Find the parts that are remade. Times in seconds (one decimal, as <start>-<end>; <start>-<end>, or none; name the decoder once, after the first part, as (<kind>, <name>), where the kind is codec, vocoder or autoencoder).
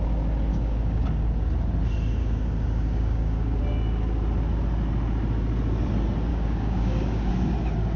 0.5-1.3 (codec, DAC); 2.2-3.6; 6.3-7.3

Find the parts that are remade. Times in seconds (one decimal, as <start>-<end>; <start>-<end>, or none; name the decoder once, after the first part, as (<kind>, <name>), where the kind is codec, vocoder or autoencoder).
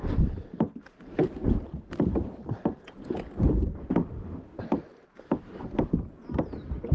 3.8-4.6 (autoencoder, DAC-VAE)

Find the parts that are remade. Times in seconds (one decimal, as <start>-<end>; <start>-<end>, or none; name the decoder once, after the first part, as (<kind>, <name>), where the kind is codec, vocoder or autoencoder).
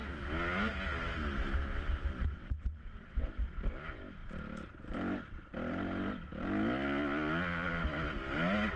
2.2-3.3 (vocoder, WaveNeXt)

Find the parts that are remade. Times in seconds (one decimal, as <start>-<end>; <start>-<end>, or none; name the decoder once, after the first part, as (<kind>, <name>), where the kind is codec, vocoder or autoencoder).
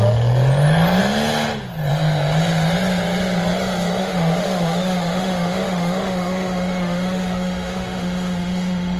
4.0-9.0 (autoencoder, DAC-VAE)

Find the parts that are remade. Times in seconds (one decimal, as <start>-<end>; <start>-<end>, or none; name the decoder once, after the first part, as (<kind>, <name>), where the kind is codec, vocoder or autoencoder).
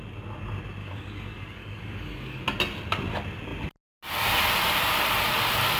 0.8-2.4 (codec, DAC)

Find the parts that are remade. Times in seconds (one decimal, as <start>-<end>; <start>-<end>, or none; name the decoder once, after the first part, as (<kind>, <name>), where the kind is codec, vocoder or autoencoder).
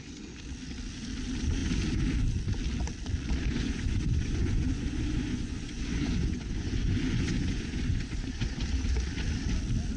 3.4-8.6 (vocoder, Vocos)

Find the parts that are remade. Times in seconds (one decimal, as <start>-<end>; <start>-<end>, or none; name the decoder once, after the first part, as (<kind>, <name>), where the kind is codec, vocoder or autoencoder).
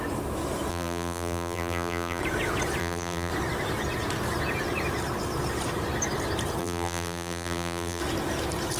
0.7-2.2 (vocoder, BigVGAN v2); 2.8-3.3; 6.6-8.0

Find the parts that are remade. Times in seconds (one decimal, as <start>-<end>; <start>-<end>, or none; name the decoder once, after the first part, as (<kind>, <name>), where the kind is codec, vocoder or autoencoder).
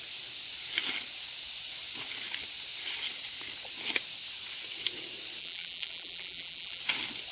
5.4-6.8 (vocoder, BigVGAN v2)